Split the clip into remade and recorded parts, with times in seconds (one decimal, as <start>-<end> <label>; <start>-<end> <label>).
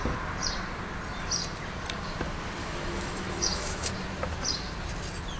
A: 0.0-2.6 recorded; 2.6-3.9 remade; 3.9-5.4 recorded